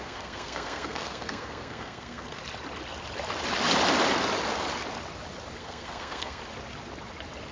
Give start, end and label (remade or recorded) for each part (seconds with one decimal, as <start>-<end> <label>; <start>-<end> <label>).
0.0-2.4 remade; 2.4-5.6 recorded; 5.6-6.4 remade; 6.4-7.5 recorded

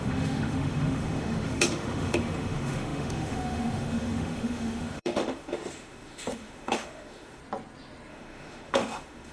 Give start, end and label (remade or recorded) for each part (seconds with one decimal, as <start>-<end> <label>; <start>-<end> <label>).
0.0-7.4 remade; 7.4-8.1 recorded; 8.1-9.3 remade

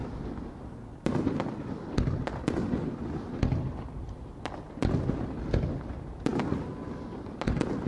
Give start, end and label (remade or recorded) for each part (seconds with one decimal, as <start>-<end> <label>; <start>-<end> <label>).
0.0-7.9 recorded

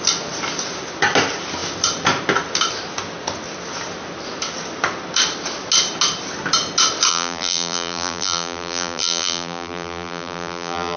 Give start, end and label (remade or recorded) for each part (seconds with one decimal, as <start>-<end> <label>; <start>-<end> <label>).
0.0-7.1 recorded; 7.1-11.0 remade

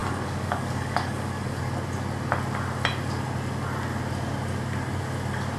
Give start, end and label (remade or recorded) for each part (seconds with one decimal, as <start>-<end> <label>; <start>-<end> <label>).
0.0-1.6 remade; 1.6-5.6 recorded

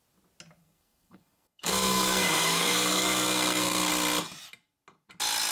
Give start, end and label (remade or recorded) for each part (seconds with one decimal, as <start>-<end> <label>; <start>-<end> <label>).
0.0-0.6 recorded; 0.6-3.9 remade; 3.9-5.5 recorded

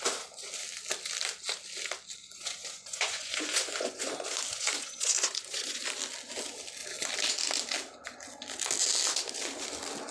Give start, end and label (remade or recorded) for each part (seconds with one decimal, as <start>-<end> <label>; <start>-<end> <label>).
0.0-2.2 recorded; 2.2-4.1 remade; 4.1-4.5 recorded; 4.5-5.8 remade; 5.8-10.1 recorded